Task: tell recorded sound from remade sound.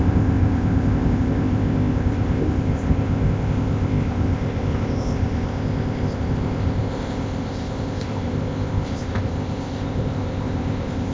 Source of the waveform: remade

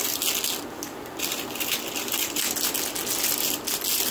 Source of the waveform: recorded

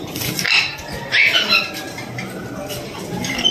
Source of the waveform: recorded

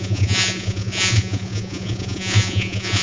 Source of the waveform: remade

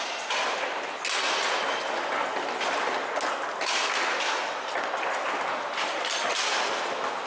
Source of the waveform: recorded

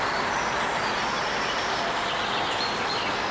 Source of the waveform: remade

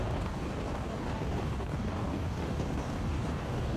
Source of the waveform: remade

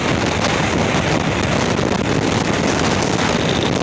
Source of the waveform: recorded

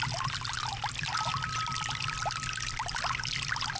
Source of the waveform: recorded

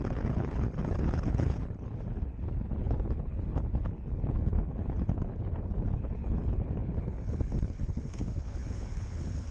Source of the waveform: remade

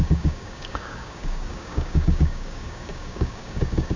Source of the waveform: remade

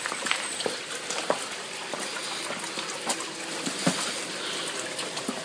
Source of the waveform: recorded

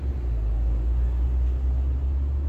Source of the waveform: recorded